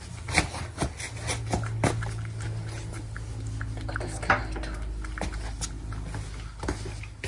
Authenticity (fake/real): real